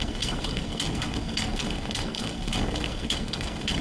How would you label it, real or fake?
fake